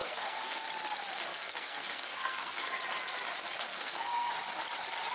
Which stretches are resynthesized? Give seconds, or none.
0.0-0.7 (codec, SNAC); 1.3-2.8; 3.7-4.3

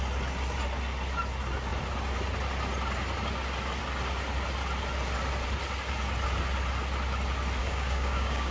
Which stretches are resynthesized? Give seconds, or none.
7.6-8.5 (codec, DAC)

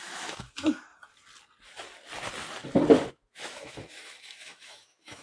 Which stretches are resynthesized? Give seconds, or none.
0.0-0.9 (autoencoder, DAC-VAE); 3.1-5.2

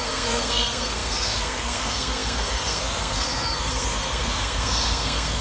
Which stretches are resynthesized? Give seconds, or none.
0.0-5.4 (codec, SNAC)